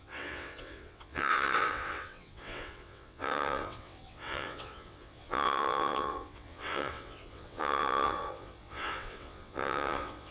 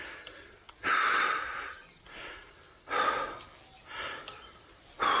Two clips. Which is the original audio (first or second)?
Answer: second